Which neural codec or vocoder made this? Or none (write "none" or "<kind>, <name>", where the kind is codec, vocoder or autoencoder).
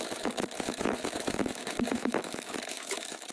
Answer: autoencoder, DAC-VAE